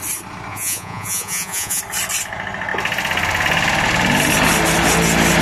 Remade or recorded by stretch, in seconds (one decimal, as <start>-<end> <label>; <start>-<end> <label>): 0.0-0.5 recorded; 0.5-1.8 remade; 1.8-5.4 recorded